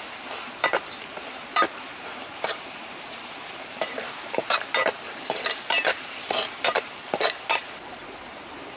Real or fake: fake